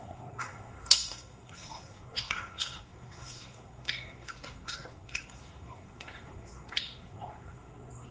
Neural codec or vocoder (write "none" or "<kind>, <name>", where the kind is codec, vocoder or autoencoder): codec, SNAC